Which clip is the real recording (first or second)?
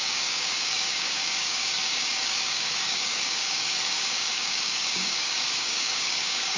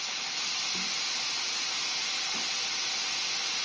second